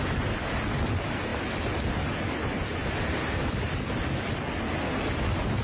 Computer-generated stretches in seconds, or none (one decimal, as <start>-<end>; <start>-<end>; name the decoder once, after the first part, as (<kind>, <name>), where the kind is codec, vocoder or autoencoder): none